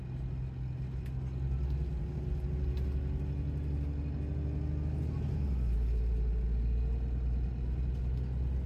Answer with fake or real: real